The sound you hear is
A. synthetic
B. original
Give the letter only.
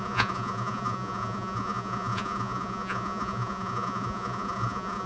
A